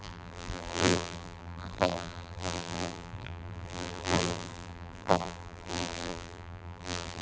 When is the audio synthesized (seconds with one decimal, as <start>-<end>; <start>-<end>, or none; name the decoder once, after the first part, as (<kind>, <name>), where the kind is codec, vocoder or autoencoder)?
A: 0.0-7.2 (vocoder, BigVGAN v2)